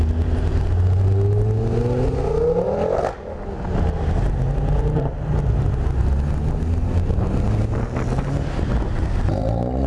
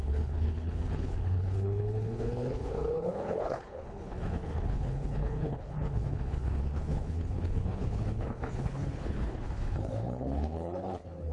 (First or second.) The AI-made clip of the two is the second